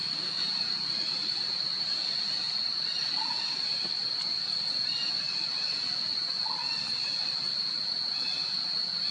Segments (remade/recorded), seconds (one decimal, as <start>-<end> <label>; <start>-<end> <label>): 0.0-5.1 remade; 5.1-9.1 recorded